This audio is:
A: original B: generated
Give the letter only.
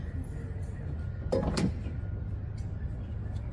A